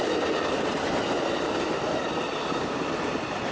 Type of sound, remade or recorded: recorded